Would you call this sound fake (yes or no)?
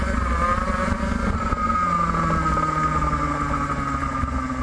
no